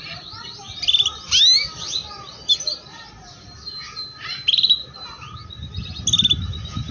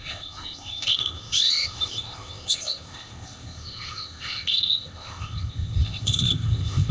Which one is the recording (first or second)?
first